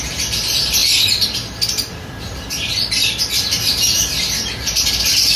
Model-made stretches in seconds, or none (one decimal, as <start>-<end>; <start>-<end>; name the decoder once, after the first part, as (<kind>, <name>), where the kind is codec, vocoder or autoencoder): 0.8-3.7 (vocoder, BigVGAN v2)